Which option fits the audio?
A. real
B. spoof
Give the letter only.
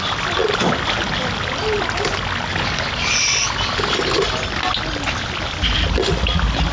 A